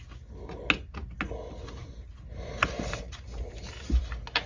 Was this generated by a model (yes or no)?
no